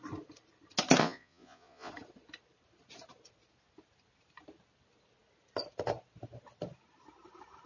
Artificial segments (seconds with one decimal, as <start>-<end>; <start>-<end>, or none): 1.0-1.9